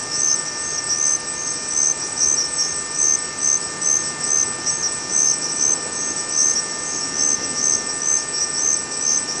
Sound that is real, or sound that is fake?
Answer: real